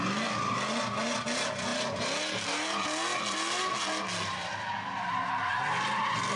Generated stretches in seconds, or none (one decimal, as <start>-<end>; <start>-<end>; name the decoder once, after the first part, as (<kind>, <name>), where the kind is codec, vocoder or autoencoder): none